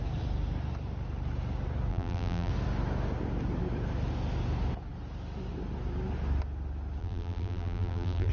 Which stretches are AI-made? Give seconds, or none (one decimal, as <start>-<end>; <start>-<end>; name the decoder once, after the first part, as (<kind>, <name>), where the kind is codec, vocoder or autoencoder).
1.9-2.5 (vocoder, BigVGAN v2); 7.0-8.3